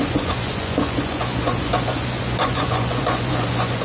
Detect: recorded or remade remade